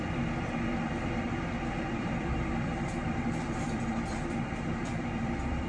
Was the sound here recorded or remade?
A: remade